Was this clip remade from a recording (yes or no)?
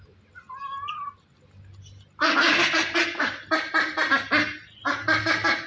no